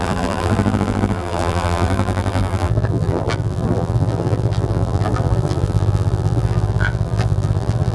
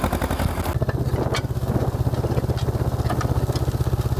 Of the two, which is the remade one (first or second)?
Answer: first